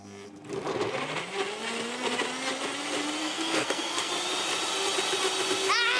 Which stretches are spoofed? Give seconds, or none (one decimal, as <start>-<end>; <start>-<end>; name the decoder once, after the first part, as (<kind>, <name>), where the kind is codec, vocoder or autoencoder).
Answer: 3.2-4.1 (codec, SNAC)